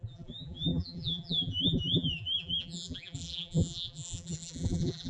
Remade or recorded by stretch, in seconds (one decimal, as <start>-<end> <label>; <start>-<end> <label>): 0.0-5.1 remade